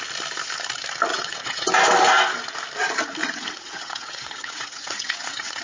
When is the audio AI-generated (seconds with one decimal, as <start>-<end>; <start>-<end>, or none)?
1.1-1.7; 3.2-5.6

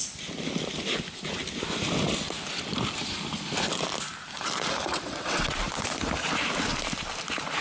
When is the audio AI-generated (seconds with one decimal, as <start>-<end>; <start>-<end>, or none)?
4.9-5.6

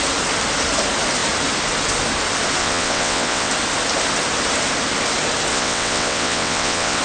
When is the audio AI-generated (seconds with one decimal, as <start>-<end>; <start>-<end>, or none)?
2.6-3.5; 5.5-7.0

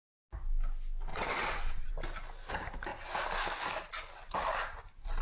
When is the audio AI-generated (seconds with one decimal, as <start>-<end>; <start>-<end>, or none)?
1.1-1.9

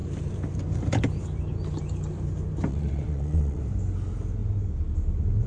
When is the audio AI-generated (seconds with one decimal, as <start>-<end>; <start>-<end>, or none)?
2.7-3.6

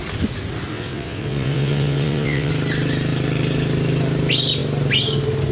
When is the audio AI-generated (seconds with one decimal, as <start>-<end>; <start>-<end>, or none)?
0.7-2.5

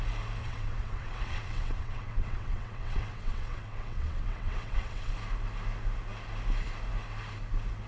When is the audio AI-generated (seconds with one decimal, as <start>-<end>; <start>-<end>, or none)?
0.4-5.1